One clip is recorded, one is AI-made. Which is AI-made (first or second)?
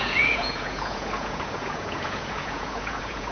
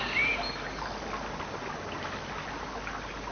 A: first